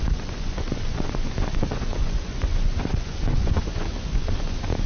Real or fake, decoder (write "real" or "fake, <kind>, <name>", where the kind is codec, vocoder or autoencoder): fake, vocoder, Vocos